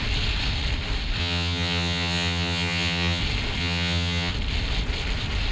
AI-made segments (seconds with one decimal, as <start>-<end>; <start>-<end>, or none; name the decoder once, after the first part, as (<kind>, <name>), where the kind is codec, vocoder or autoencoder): 1.2-3.2 (vocoder, HiFi-GAN); 3.6-4.3